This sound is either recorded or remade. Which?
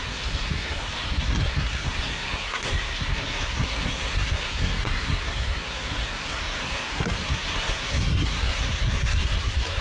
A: remade